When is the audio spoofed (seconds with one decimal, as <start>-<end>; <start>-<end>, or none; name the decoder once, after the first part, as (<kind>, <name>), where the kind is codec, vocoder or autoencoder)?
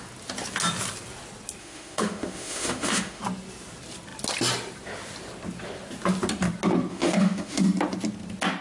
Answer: 1.6-3.2 (autoencoder, DAC-VAE); 6.9-7.6